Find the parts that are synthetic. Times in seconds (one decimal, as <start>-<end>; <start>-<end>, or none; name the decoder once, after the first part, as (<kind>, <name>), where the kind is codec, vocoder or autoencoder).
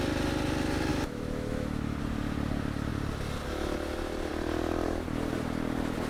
0.9-2.0 (autoencoder, DAC-VAE)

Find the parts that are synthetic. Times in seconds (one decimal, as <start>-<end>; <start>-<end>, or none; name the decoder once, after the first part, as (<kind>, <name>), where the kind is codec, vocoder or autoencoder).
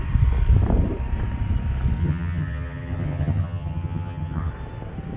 2.0-4.5 (vocoder, HiFi-GAN)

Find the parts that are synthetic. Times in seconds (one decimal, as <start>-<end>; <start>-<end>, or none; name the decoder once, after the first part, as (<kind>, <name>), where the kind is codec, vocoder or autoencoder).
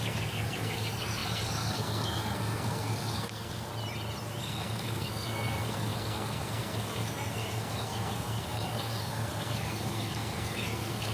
0.0-3.7 (codec, SNAC); 4.4-11.1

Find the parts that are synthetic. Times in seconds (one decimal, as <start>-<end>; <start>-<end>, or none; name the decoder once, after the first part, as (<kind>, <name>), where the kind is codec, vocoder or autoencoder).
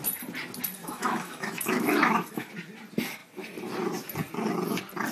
0.8-2.5 (autoencoder, DAC-VAE)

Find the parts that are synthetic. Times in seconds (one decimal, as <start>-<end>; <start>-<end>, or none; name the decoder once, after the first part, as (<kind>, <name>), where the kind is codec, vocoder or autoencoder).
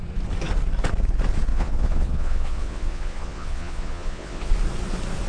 1.5-4.5 (vocoder, Vocos)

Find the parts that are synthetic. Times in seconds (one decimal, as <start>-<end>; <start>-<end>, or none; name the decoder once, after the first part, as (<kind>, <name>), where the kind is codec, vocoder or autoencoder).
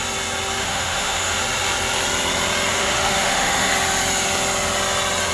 0.6-1.4 (autoencoder, DAC-VAE); 2.7-3.7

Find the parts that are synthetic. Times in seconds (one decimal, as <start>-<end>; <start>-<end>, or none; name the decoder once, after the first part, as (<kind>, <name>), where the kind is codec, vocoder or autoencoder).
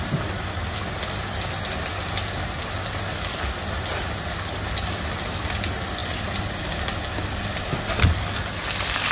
none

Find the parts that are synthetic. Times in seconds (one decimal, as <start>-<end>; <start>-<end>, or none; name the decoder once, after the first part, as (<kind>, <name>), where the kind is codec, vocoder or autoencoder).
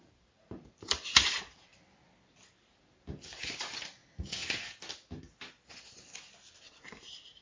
0.0-1.7 (vocoder, BigVGAN v2); 3.6-4.0; 6.8-7.4